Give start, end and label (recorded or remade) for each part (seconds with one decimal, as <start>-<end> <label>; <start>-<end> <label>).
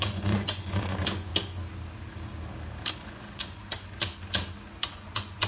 0.0-1.3 remade; 1.3-2.9 recorded; 2.9-3.6 remade; 3.6-4.9 recorded; 4.9-5.5 remade